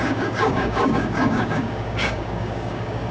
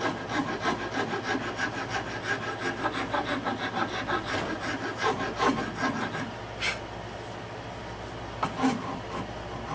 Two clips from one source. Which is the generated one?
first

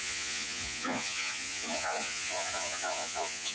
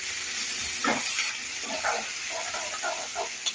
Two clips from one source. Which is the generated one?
first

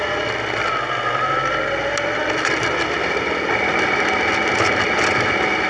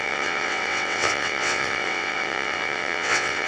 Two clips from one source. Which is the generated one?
second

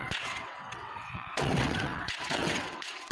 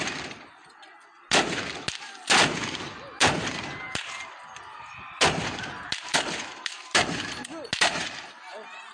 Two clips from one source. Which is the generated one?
first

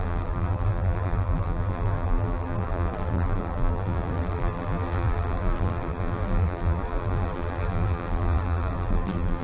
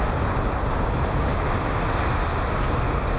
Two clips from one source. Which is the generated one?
first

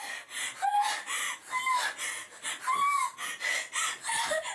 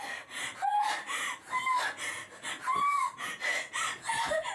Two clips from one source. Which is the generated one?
second